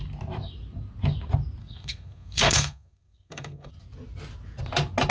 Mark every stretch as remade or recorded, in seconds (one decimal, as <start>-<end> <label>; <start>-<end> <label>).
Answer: 0.0-1.6 recorded; 1.6-3.7 remade; 3.7-5.1 recorded